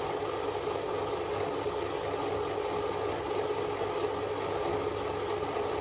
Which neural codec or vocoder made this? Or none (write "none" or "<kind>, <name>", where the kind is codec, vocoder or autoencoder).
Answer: none